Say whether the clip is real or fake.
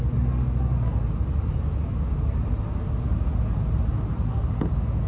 real